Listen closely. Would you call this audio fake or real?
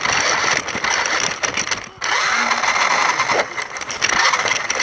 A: real